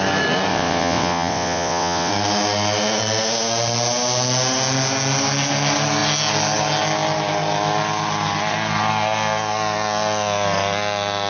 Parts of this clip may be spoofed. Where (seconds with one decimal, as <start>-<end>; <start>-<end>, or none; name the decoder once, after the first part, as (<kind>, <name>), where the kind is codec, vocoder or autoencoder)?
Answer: 0.5-2.1 (vocoder, WaveNeXt)